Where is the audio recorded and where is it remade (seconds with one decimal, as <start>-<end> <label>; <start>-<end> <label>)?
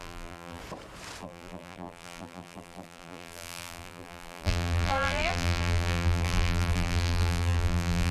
0.0-0.6 remade; 0.6-1.2 recorded; 1.2-8.1 remade